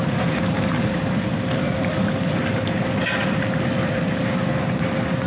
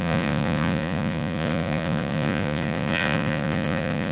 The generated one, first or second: second